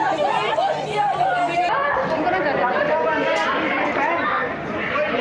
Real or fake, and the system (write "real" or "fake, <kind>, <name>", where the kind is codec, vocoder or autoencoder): real